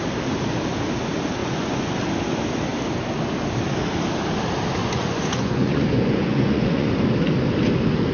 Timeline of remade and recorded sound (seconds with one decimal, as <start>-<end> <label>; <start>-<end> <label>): 0.0-1.4 recorded; 1.4-1.9 remade; 1.9-4.8 recorded; 4.8-6.9 remade; 6.9-8.1 recorded